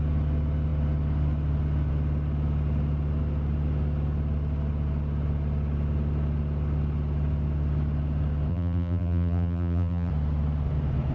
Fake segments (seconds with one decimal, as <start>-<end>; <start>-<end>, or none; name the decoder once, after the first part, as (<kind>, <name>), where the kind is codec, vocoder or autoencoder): 8.5-10.1 (vocoder, BigVGAN v2)